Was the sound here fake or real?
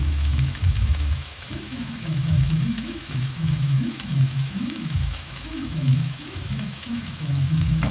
fake